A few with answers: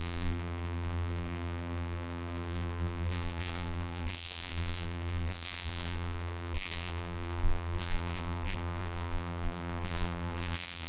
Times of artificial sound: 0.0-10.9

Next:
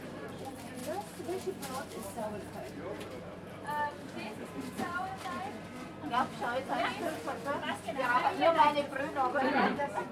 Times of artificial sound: 0.0-5.1; 7.8-10.1